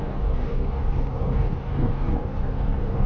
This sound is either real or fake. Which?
fake